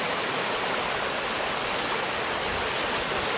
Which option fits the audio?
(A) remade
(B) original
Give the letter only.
B